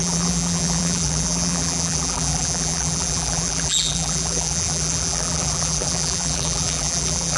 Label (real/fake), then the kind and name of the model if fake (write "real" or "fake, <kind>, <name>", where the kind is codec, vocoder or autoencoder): fake, vocoder, BigVGAN v2